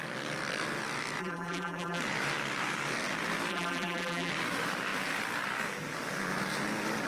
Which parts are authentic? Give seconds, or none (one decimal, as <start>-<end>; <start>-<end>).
0.0-1.2; 2.0-3.5; 4.3-7.1